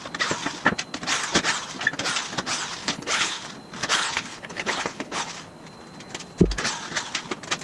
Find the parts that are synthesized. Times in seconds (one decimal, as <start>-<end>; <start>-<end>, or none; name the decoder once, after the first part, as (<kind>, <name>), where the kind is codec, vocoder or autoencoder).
2.8-3.4 (codec, HILCodec); 3.8-5.2